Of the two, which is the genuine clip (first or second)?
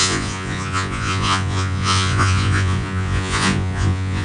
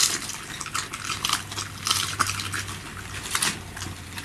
second